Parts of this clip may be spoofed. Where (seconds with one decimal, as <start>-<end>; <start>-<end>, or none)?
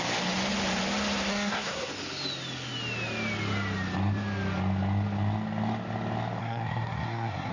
1.3-1.9; 6.4-7.5